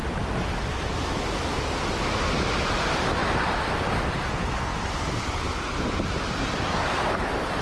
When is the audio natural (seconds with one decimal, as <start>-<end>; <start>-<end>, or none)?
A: none

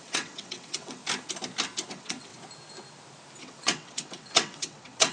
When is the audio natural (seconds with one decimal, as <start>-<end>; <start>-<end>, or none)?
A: 1.0-1.9; 2.3-3.4

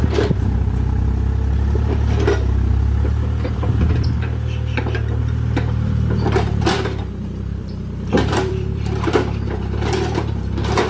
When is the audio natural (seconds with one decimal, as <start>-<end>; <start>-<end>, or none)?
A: 0.0-2.7; 7.0-7.5; 10.5-10.9

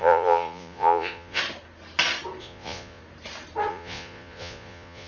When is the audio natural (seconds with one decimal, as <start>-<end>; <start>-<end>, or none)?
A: 1.4-2.4; 3.0-3.7

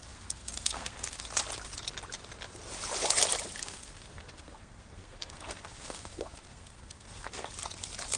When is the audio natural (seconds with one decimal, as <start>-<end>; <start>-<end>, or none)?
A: 1.2-3.6; 7.5-8.2